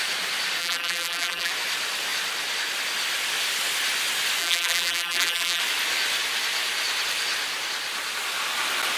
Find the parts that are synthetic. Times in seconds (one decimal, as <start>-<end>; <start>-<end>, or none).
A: 0.6-1.5; 4.4-5.6